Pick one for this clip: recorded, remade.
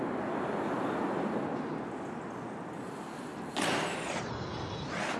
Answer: recorded